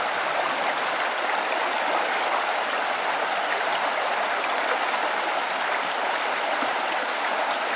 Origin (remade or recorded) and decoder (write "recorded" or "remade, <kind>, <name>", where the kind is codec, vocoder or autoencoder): recorded